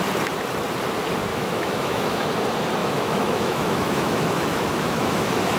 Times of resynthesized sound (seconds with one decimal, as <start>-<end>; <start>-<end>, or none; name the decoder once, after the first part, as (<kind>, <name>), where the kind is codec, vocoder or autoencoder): 1.3-2.3 (autoencoder, DAC-VAE); 2.8-5.6